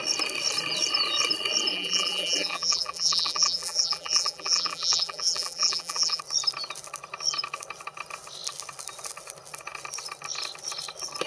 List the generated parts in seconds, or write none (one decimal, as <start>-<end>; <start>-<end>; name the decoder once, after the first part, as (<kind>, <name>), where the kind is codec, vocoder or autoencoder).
1.7-6.2 (vocoder, BigVGAN v2)